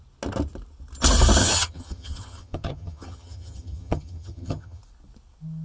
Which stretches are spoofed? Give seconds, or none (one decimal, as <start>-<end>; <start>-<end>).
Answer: 1.4-4.8